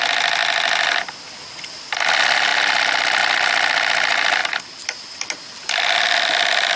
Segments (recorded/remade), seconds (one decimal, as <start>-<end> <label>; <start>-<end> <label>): 0.0-4.4 recorded; 4.4-5.4 remade; 5.4-6.8 recorded